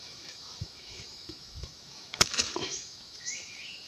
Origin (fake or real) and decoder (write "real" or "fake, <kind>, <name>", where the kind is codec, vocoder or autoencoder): fake, autoencoder, DAC-VAE